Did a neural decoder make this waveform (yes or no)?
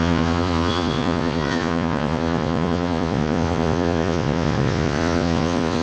yes